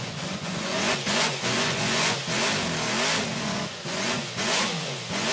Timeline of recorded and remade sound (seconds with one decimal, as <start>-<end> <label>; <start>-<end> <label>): 0.0-2.2 remade; 2.2-3.3 recorded; 3.3-5.3 remade